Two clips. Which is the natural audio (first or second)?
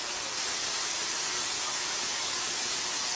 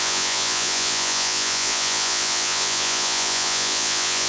first